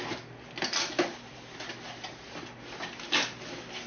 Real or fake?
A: real